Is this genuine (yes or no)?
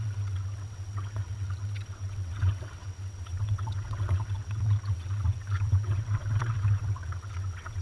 no